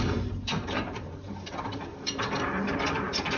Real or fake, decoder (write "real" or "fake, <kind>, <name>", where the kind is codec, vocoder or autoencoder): fake, vocoder, BigVGAN v2